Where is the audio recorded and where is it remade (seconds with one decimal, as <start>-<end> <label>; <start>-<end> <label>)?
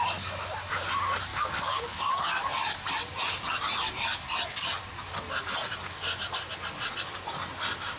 0.0-1.3 recorded; 1.3-2.3 remade; 2.3-8.0 recorded